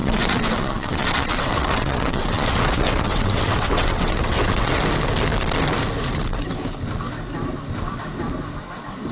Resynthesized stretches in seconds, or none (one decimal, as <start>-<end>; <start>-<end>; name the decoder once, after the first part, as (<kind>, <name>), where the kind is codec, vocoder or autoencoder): 0.0-4.8 (vocoder, WaveNeXt)